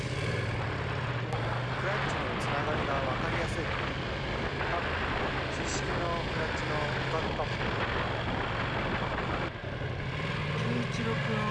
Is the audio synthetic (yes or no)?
no